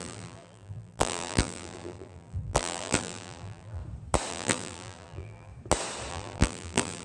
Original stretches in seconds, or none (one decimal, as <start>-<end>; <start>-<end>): 3.8-4.3; 5.5-6.1